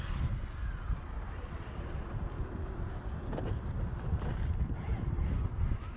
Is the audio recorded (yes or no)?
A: yes